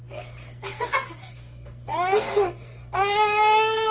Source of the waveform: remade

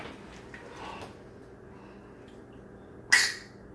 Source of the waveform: recorded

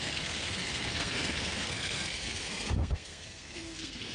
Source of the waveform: remade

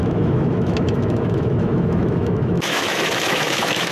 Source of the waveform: remade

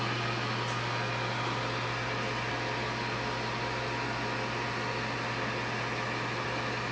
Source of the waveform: recorded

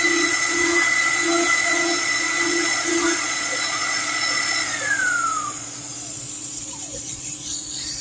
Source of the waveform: remade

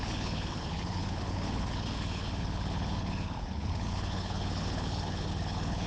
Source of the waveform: remade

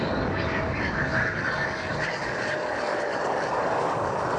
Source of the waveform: remade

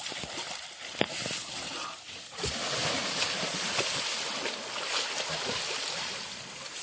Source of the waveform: recorded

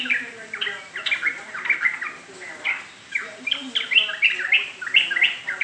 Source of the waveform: recorded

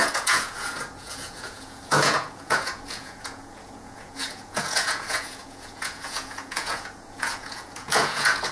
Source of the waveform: remade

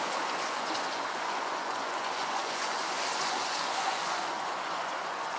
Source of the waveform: remade